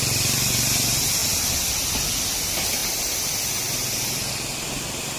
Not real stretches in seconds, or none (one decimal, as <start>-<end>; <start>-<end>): none